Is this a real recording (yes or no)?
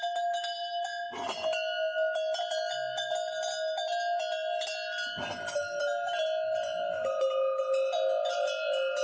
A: yes